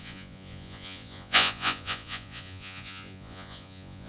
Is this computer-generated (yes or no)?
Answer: yes